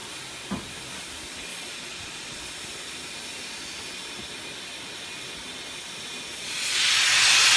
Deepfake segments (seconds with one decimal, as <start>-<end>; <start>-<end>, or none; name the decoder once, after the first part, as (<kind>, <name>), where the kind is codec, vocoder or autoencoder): 1.5-2.4 (vocoder, Vocos); 6.3-6.9